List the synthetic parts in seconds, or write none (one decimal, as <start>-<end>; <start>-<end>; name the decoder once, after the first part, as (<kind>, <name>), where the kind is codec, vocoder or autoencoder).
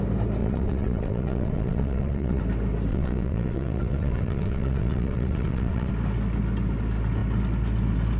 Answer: 0.4-2.4 (vocoder, WaveNeXt); 2.9-5.9